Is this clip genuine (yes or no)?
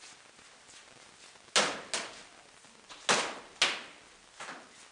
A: yes